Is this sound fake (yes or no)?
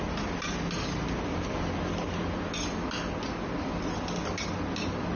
no